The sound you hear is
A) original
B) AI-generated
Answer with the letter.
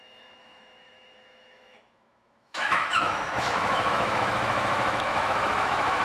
B